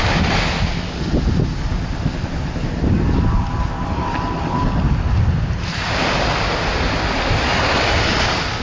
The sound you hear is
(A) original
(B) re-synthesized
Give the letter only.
A